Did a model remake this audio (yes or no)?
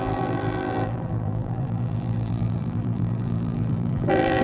yes